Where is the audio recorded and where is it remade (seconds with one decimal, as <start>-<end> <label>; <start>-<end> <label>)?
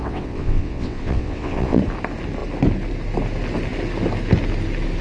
0.0-1.8 remade; 1.8-5.0 recorded